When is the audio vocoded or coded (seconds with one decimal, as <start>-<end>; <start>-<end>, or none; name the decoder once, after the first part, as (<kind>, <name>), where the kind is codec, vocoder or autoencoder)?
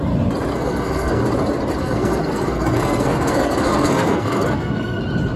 0.5-1.2 (codec, SNAC); 1.8-5.0